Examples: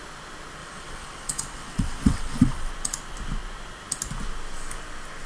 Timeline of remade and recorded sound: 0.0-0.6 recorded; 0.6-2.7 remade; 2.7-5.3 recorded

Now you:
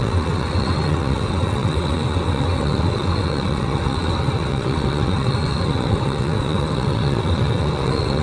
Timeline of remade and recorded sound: 0.0-8.2 remade

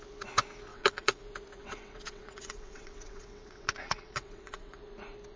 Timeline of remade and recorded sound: 0.0-0.7 recorded; 0.7-1.2 remade; 1.2-1.6 recorded; 1.6-4.8 remade; 4.8-5.4 recorded

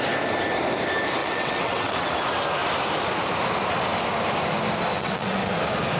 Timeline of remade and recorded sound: 0.0-1.2 recorded; 1.2-2.2 remade; 2.2-4.9 recorded; 4.9-5.6 remade; 5.6-6.0 recorded

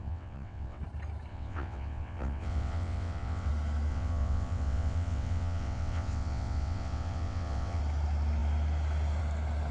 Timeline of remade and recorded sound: 0.0-0.8 remade; 0.8-1.3 recorded; 1.3-3.5 remade; 3.5-3.9 recorded; 3.9-7.8 remade; 7.8-9.7 recorded